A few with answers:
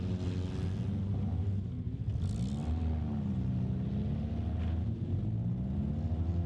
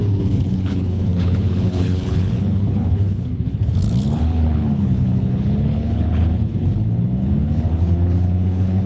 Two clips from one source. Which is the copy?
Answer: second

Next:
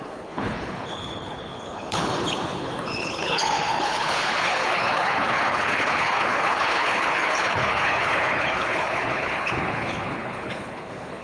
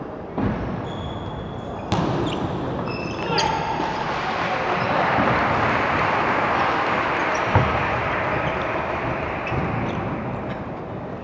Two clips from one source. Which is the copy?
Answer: first